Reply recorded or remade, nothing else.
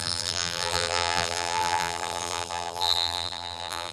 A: remade